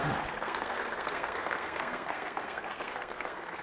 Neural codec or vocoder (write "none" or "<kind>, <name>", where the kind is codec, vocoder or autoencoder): codec, SNAC